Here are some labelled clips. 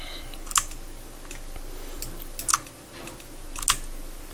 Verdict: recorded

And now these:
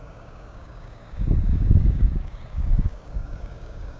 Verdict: remade